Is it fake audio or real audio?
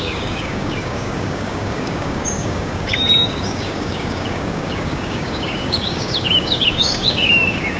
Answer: fake